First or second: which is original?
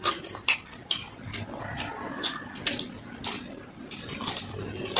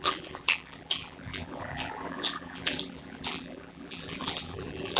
first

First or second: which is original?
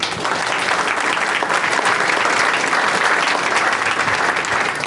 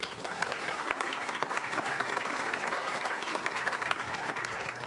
first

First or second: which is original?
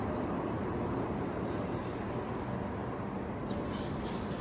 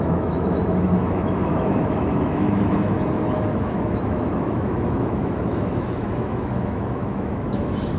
first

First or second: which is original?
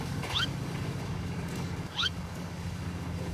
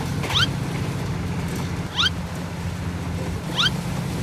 second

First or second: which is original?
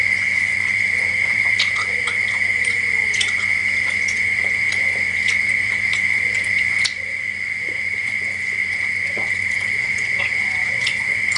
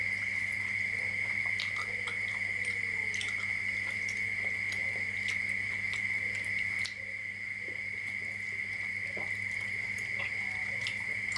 second